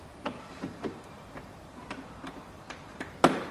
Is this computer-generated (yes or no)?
yes